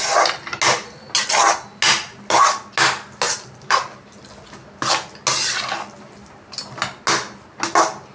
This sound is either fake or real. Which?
real